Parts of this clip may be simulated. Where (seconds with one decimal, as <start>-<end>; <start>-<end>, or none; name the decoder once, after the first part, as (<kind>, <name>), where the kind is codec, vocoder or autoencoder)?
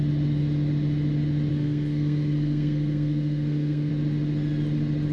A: 1.5-3.9 (codec, SNAC)